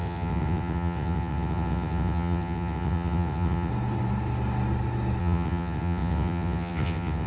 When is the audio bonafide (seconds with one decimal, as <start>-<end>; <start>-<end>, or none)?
3.7-5.2